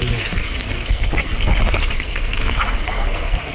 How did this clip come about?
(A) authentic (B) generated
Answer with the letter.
B